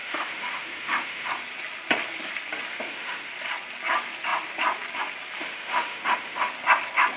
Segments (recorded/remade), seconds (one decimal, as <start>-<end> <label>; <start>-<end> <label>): 0.0-1.3 remade; 1.3-2.7 recorded; 2.7-3.3 remade; 3.3-5.4 recorded; 5.4-6.5 remade; 6.5-7.2 recorded